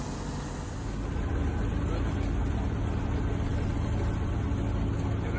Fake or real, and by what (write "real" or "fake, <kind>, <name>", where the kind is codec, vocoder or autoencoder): real